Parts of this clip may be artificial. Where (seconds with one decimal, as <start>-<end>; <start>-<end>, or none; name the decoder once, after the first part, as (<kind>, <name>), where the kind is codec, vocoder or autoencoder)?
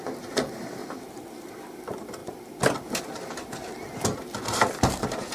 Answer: 0.0-2.2 (vocoder, BigVGAN v2); 3.0-5.3